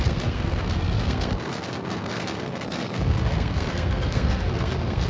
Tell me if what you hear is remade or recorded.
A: remade